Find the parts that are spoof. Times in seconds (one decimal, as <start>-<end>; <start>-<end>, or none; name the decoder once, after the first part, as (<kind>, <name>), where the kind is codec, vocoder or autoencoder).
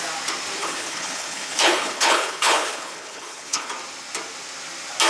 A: 0.6-3.7 (codec, HILCodec)